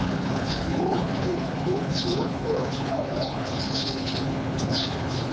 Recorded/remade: remade